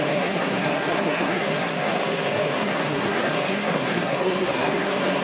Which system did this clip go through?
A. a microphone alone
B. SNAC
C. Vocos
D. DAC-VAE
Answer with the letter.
B